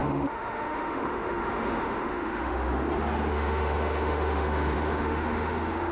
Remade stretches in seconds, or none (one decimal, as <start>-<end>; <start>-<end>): 0.0-2.7; 3.3-5.9